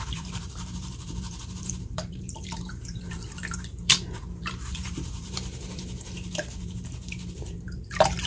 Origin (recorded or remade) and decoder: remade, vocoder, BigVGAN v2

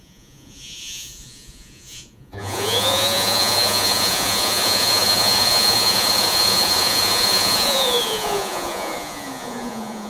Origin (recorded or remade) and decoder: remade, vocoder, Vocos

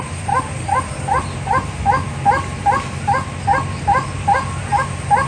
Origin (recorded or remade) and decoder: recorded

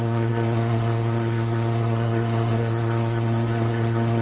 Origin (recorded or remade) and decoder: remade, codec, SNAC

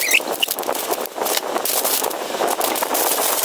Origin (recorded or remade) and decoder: recorded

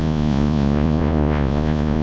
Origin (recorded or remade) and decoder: remade, vocoder, Vocos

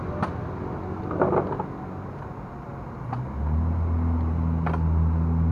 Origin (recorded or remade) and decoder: recorded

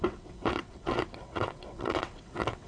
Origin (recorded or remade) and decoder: remade, vocoder, WaveNeXt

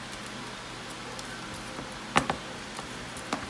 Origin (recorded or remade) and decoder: recorded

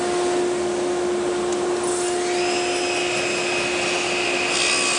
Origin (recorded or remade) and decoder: recorded